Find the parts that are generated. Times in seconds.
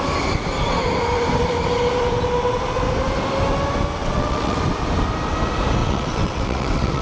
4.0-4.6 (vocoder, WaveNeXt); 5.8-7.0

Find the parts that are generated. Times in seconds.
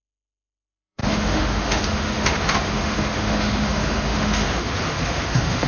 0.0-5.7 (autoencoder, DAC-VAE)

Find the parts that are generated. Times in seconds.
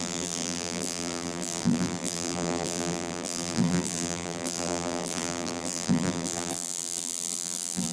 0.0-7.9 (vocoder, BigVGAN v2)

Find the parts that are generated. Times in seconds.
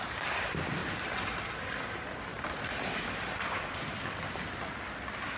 0.8-1.4 (vocoder, BigVGAN v2); 2.3-2.9